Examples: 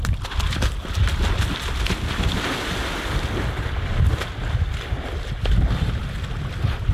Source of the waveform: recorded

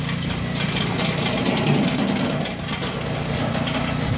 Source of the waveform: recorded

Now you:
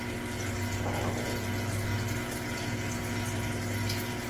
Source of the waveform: recorded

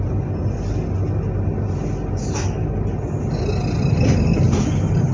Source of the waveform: recorded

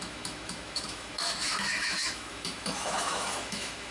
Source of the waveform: remade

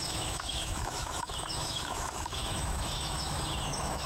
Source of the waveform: remade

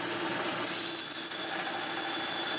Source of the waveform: recorded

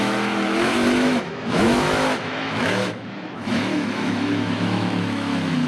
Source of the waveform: remade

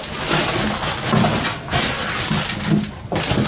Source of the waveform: recorded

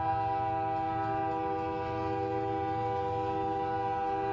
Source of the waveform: recorded